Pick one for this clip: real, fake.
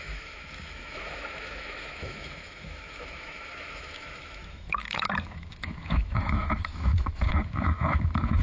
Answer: fake